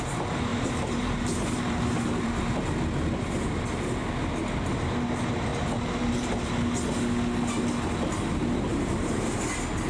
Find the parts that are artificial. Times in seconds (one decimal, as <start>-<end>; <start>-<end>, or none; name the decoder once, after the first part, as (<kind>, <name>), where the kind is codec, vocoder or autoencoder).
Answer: 0.5-2.6 (vocoder, BigVGAN v2); 5.5-6.5; 8.7-9.4